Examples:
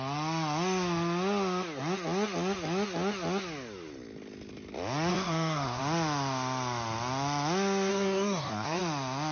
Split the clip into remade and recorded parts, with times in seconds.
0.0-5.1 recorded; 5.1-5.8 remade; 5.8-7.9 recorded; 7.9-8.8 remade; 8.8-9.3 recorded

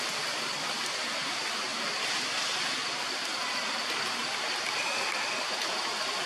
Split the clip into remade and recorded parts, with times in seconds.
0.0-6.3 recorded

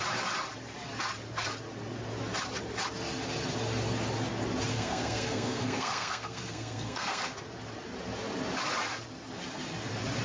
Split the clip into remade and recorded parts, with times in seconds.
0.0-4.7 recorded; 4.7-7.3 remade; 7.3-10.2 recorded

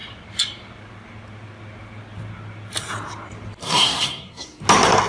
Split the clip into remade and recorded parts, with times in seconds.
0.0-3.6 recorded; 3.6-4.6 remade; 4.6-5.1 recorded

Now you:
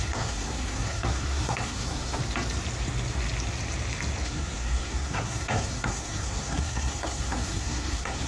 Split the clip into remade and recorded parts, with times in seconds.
0.0-2.2 remade; 2.2-4.2 recorded; 4.2-8.3 remade

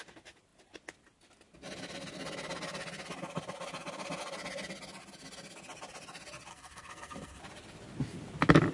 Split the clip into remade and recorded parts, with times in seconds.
0.0-6.5 recorded; 6.5-7.4 remade; 7.4-8.7 recorded

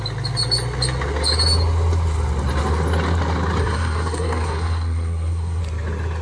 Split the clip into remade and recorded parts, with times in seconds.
0.0-3.6 recorded; 3.6-5.6 remade; 5.6-6.2 recorded

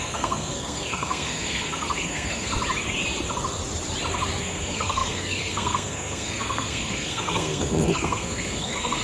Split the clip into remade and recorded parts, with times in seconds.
0.0-2.5 remade; 2.5-4.4 recorded; 4.4-9.0 remade